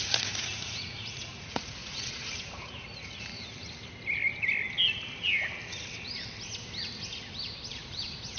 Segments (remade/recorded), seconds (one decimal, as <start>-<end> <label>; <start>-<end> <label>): 0.0-3.3 remade; 3.3-7.7 recorded; 7.7-8.4 remade